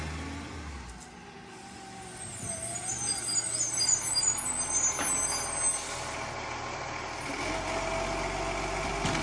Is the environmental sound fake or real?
real